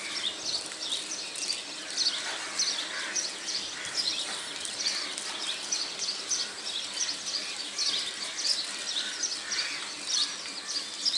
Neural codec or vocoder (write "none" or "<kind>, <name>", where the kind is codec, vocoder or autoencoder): vocoder, BigVGAN v2